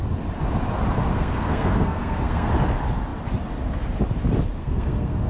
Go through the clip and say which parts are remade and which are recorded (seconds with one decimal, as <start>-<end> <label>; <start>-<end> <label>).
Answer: 0.0-1.1 recorded; 1.1-2.5 remade; 2.5-4.6 recorded; 4.6-5.3 remade